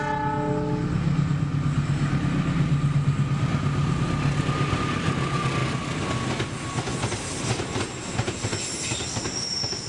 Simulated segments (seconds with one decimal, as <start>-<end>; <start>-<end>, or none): none